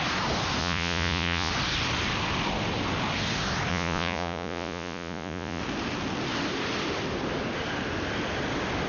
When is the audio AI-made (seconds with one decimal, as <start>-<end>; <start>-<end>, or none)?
0.6-1.5; 3.7-5.6